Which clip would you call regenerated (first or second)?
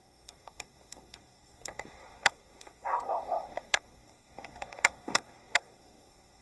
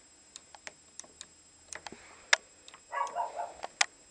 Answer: first